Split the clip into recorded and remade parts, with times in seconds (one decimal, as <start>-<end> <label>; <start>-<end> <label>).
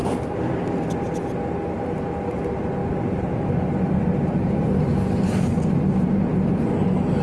0.0-1.1 remade; 1.1-2.8 recorded; 2.8-6.7 remade; 6.7-7.2 recorded